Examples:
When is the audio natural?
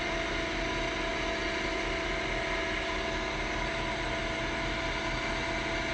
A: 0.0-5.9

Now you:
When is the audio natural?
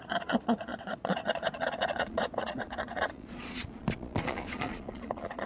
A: none